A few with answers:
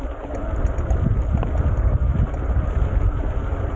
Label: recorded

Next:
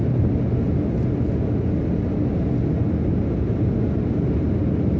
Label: recorded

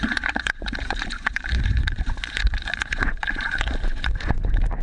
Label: remade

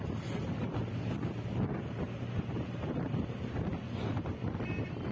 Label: recorded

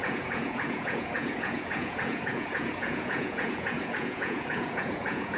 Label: remade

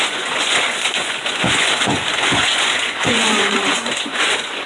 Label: remade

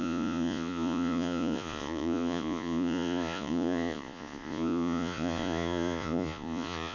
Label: remade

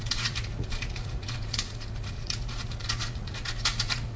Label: remade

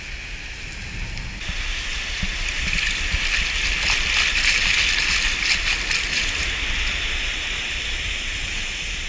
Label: recorded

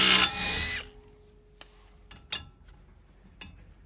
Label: recorded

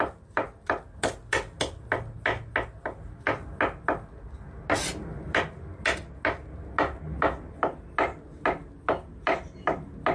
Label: recorded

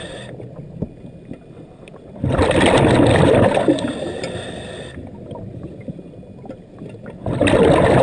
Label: recorded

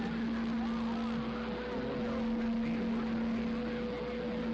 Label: recorded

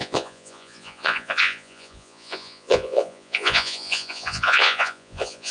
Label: remade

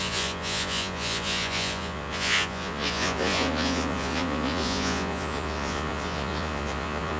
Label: remade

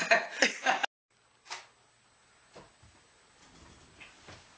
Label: recorded